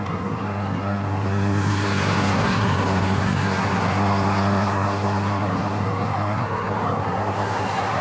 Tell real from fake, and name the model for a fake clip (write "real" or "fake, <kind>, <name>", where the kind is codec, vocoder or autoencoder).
fake, codec, SNAC